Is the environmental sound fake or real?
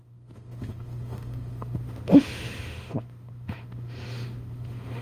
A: fake